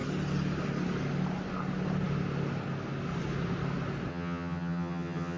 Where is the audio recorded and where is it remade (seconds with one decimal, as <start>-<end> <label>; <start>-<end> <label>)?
0.0-4.1 recorded; 4.1-5.4 remade